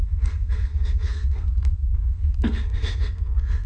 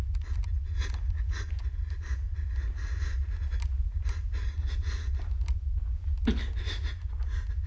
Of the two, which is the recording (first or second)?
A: second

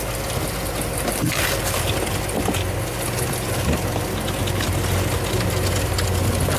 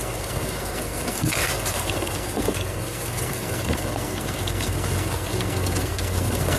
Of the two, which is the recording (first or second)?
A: first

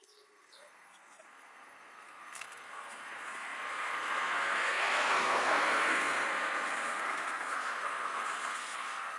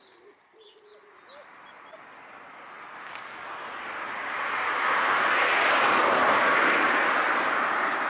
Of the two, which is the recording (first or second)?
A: second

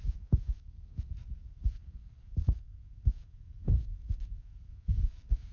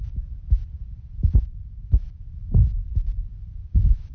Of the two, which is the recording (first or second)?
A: second